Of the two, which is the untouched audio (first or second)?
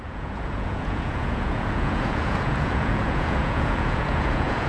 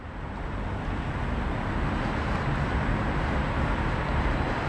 second